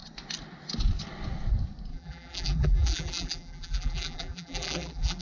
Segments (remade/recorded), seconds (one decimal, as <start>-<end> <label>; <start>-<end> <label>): 0.0-1.9 recorded; 1.9-5.2 remade